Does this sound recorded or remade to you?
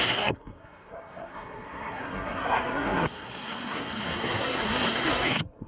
remade